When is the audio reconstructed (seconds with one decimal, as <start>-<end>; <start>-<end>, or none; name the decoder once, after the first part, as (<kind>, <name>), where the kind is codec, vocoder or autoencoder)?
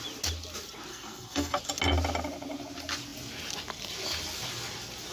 0.9-1.6 (codec, SNAC)